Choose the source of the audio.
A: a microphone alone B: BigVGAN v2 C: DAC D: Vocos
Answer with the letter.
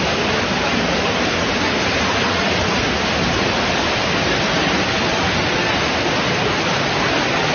A